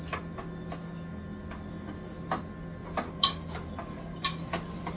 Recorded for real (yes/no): yes